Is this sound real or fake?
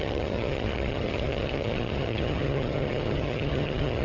fake